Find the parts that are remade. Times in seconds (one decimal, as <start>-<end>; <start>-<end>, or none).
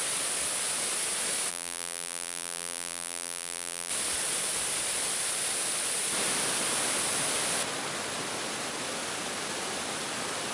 1.5-3.9